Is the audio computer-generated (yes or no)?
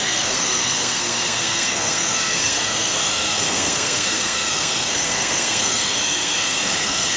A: yes